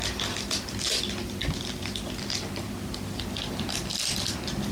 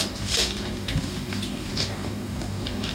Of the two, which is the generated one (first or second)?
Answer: second